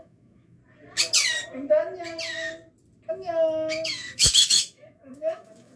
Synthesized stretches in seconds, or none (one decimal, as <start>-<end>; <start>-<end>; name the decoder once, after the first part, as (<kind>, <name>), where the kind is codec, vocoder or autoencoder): 0.0-0.6 (autoencoder, DAC-VAE); 3.1-5.8